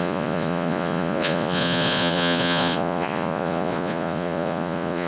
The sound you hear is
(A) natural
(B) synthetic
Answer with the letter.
B